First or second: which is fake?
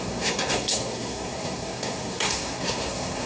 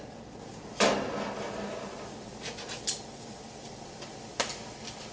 first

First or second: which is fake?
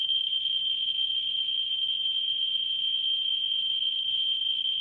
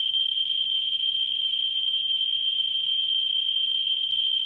second